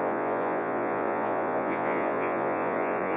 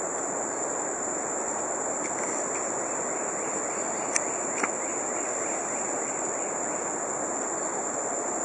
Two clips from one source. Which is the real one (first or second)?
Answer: second